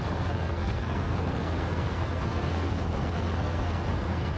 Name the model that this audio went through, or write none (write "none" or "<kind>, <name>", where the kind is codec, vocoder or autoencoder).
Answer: codec, SNAC